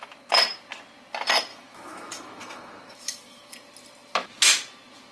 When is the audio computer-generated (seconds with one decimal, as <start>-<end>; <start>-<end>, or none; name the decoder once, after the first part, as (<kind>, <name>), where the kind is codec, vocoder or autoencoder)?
1.5-3.5 (autoencoder, DAC-VAE)